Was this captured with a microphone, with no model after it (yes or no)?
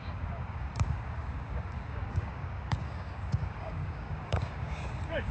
no